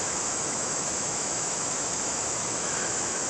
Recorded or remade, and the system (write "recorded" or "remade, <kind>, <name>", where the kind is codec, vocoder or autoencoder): remade, autoencoder, DAC-VAE